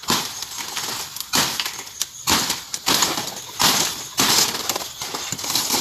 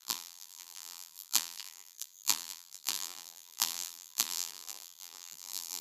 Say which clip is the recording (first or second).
first